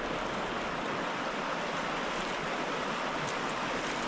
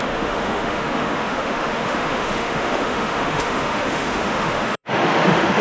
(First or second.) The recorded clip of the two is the first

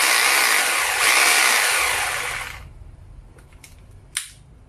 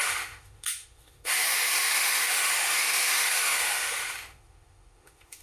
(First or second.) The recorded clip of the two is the first